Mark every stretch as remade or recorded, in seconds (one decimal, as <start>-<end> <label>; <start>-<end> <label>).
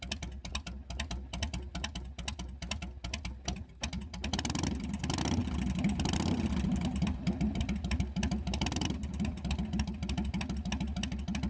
0.0-11.5 recorded